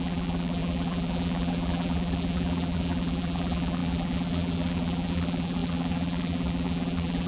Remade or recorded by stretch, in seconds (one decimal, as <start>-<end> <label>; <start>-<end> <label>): 0.0-7.3 remade